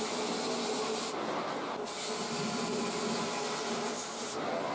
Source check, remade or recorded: recorded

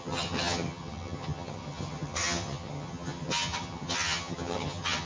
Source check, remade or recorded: remade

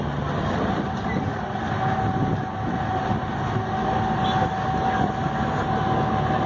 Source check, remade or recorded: recorded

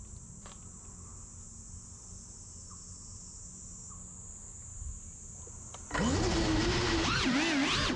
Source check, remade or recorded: recorded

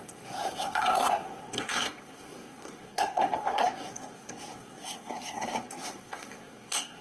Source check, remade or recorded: remade